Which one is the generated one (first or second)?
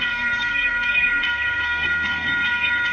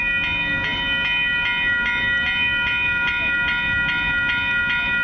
first